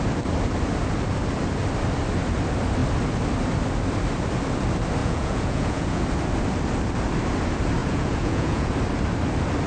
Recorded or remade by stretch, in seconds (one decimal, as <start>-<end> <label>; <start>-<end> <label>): 0.0-5.0 recorded; 5.0-6.0 remade; 6.0-7.8 recorded; 7.8-8.7 remade; 8.7-9.7 recorded